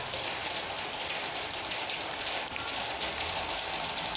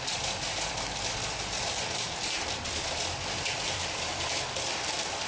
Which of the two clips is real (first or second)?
first